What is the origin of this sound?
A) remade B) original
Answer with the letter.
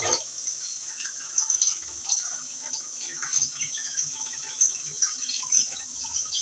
A